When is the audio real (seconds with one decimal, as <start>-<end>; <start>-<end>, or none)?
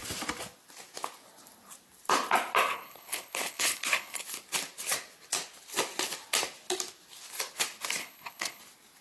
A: 0.0-2.7; 4.2-8.0; 8.6-9.0